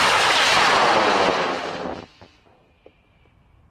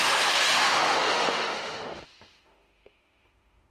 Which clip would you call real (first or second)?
first